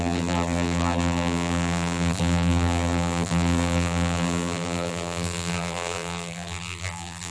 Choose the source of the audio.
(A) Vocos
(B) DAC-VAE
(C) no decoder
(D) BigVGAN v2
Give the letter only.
D